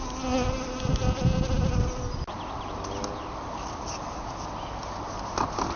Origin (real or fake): real